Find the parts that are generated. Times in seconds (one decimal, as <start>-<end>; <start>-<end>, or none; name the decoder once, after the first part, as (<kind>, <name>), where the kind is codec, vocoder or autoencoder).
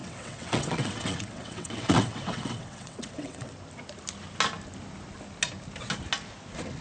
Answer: 0.0-3.5 (vocoder, WaveNeXt)